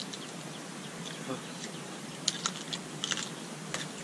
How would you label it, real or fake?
real